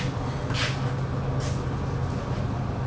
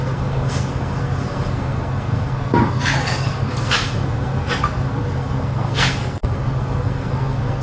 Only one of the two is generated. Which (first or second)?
second